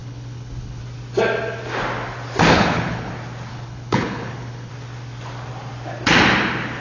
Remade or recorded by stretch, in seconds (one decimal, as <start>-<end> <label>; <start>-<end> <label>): 0.0-0.8 remade; 0.8-2.5 recorded; 2.5-3.1 remade; 3.1-3.5 recorded; 3.5-4.7 remade; 4.7-6.8 recorded